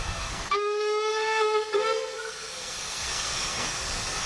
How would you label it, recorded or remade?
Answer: remade